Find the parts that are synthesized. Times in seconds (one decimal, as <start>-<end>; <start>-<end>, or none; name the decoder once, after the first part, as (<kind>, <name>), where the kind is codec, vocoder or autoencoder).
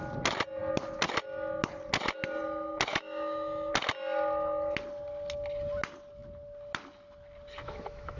2.9-3.7 (autoencoder, DAC-VAE); 7.6-8.2